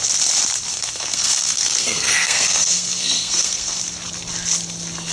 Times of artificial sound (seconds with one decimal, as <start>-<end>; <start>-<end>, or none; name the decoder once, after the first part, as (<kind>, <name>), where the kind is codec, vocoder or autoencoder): 0.7-3.8 (codec, SNAC)